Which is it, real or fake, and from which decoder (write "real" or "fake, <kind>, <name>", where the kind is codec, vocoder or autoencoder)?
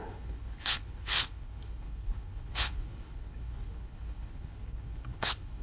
fake, codec, HILCodec